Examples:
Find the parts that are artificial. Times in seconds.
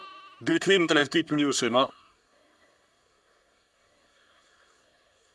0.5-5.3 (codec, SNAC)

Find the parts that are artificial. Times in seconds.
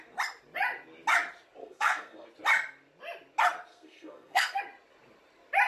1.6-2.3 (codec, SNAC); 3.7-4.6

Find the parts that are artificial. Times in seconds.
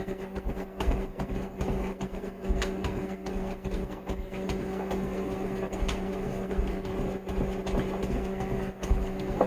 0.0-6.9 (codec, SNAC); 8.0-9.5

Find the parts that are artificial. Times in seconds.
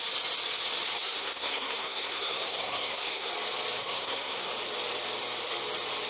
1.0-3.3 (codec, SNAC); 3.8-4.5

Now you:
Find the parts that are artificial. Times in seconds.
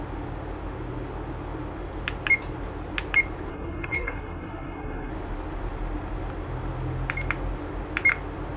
3.5-5.1 (codec, SNAC)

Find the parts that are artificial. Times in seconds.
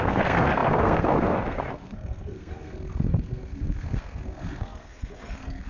0.0-5.7 (codec, SNAC)